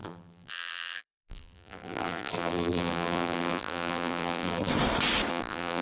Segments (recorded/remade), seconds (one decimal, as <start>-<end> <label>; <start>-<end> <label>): 0.0-4.7 remade; 4.7-5.3 recorded; 5.3-5.8 remade